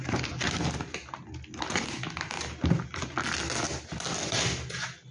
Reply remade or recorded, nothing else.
recorded